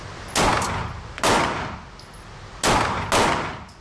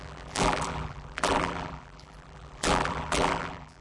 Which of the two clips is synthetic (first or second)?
second